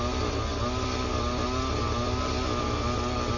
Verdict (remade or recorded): recorded